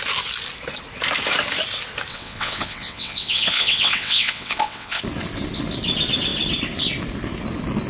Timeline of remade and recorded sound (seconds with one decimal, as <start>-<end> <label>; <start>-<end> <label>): 0.0-2.1 recorded; 2.1-5.0 remade; 5.0-7.9 recorded